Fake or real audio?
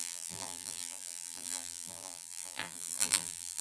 fake